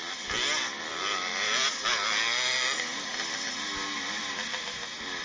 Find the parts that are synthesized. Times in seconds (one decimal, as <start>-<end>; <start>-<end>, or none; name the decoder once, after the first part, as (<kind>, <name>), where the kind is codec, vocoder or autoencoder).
none